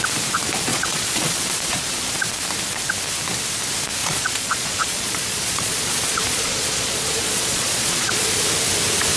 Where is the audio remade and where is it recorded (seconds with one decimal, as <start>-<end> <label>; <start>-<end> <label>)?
0.0-0.7 recorded; 0.7-2.2 remade; 2.2-4.0 recorded; 4.0-8.5 remade; 8.5-9.2 recorded